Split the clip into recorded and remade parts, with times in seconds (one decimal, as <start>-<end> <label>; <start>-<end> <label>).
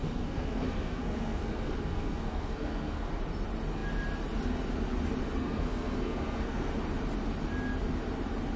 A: 0.0-3.1 remade; 3.1-5.4 recorded; 5.4-6.7 remade; 6.7-8.6 recorded